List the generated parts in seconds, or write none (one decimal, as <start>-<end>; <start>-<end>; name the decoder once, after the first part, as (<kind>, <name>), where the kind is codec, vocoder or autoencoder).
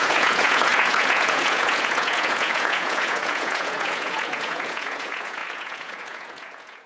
0.0-6.9 (vocoder, Vocos)